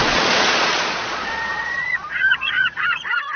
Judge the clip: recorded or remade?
remade